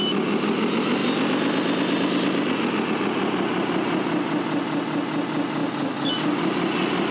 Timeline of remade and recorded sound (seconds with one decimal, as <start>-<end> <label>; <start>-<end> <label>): 0.0-7.1 recorded